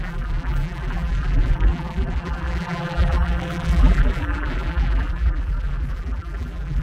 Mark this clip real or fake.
fake